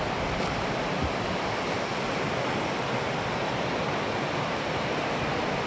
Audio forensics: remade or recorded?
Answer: recorded